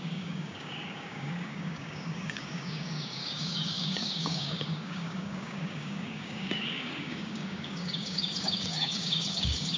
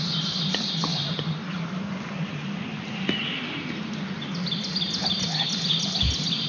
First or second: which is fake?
first